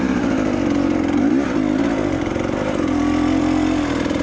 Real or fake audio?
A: real